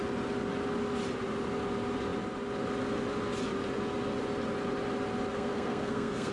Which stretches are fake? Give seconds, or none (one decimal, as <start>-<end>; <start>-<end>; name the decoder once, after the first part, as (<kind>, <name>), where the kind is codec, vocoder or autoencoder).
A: 5.3-6.3 (codec, SNAC)